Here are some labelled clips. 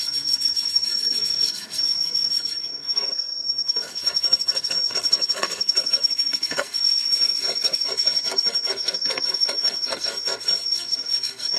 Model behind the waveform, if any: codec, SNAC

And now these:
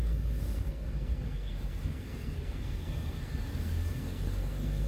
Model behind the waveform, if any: codec, SNAC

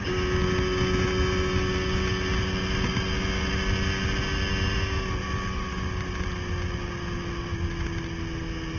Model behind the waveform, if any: none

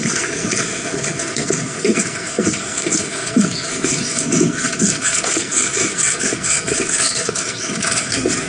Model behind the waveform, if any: codec, SNAC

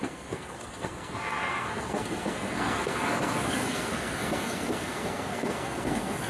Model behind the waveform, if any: codec, SNAC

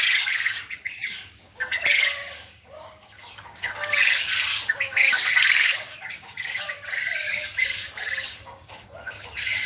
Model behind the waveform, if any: codec, DAC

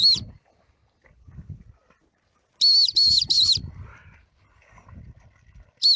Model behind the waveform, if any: none